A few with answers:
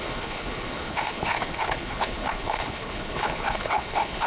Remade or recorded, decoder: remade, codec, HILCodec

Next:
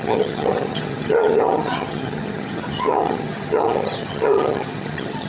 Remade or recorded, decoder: remade, vocoder, HiFi-GAN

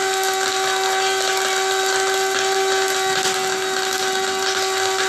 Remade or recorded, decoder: recorded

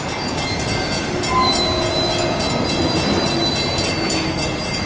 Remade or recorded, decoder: recorded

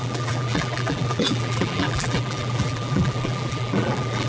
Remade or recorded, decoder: remade, vocoder, BigVGAN v2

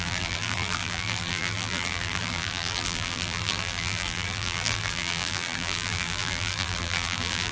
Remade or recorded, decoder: remade, vocoder, BigVGAN v2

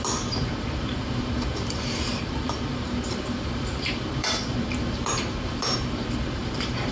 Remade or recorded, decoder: remade, vocoder, BigVGAN v2